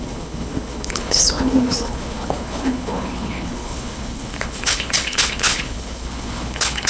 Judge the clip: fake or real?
fake